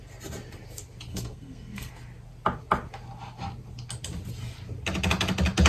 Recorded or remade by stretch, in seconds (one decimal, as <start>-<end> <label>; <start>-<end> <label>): 0.0-1.1 recorded; 1.1-1.9 remade; 1.9-5.7 recorded

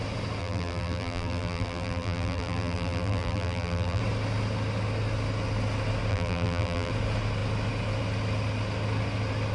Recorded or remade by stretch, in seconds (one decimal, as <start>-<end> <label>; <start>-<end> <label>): 0.0-0.4 recorded; 0.4-4.0 remade; 4.0-6.1 recorded; 6.1-6.9 remade; 6.9-9.5 recorded

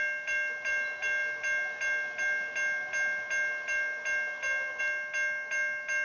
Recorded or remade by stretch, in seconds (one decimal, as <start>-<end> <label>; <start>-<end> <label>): 0.0-6.0 recorded